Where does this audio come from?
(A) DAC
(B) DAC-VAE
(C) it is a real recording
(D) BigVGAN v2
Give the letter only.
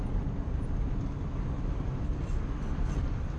C